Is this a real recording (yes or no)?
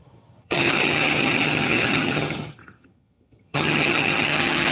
no